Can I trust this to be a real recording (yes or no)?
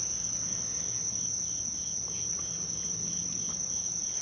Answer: yes